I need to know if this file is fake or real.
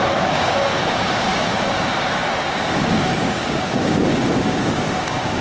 fake